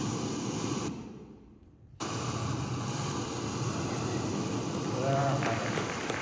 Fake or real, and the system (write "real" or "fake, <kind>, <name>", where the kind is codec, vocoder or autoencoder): fake, vocoder, BigVGAN v2